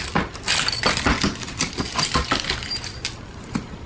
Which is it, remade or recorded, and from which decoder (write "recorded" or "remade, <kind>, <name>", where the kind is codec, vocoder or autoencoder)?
recorded